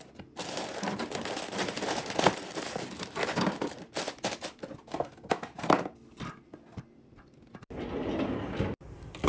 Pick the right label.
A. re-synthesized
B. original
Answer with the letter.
B